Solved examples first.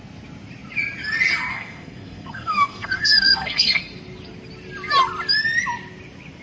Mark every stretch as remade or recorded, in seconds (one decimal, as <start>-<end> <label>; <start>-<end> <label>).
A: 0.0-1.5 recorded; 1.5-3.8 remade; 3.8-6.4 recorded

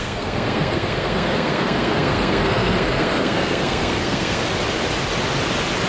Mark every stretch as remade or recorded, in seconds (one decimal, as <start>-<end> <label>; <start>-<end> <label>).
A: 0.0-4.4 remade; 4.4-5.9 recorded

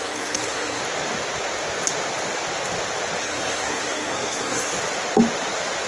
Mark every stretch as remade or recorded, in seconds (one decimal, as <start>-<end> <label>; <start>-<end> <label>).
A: 0.0-0.8 remade; 0.8-3.2 recorded; 3.2-4.7 remade; 4.7-5.9 recorded

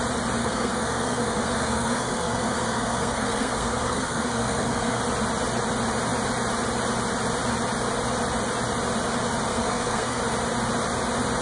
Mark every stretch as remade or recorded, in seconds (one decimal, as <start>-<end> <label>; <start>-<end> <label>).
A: 0.0-0.4 recorded; 0.4-5.0 remade; 5.0-9.5 recorded; 9.5-10.2 remade; 10.2-11.4 recorded

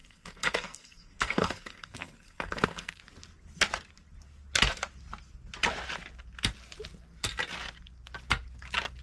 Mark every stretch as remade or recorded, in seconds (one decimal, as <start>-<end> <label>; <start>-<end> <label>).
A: 0.0-3.0 remade; 3.0-9.0 recorded

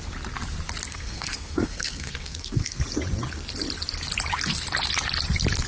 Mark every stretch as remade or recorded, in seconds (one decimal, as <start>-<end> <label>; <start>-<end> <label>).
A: 0.0-0.9 recorded; 0.9-2.8 remade; 2.8-5.7 recorded

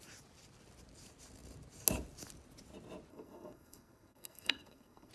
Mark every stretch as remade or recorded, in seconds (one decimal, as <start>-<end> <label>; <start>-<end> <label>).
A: 0.0-3.1 recorded; 3.1-5.1 remade

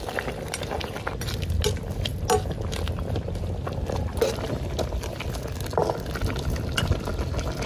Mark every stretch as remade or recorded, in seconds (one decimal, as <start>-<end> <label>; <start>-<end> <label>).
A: 0.0-7.7 recorded